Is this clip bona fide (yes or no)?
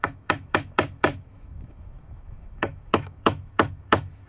no